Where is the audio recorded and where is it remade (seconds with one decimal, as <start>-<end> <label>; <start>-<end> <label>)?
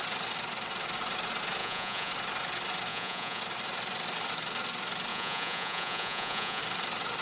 0.0-1.6 recorded; 1.6-2.1 remade; 2.1-2.9 recorded; 2.9-3.4 remade; 3.4-5.1 recorded; 5.1-6.6 remade; 6.6-7.2 recorded